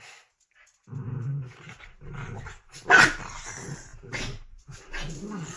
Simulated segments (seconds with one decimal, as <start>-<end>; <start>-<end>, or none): 1.3-2.0